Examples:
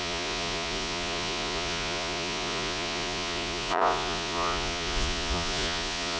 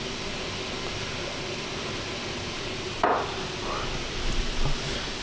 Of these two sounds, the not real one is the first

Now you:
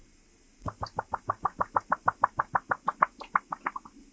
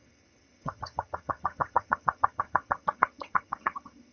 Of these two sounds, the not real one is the second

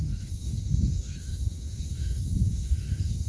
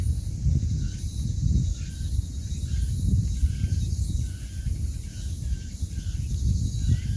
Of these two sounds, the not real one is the first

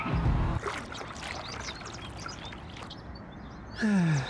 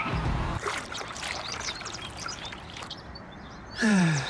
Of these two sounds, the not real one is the second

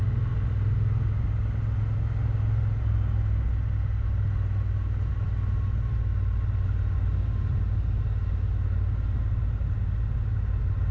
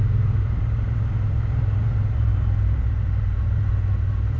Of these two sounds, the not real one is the second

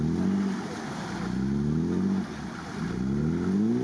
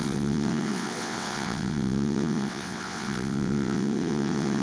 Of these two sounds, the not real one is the second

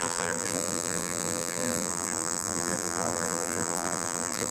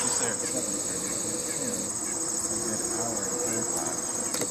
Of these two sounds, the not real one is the first